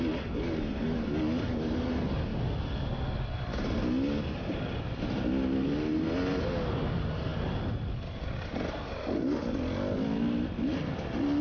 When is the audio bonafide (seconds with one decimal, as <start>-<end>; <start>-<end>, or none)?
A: 0.0-11.4